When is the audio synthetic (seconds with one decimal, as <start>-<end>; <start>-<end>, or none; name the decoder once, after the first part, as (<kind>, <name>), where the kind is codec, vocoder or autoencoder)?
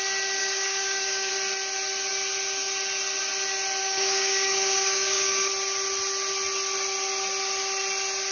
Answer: 0.4-1.3 (codec, DAC); 3.8-5.5